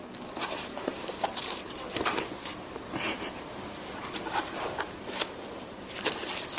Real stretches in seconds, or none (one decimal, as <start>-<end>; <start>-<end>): 0.0-6.6